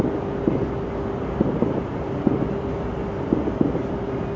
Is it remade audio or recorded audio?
recorded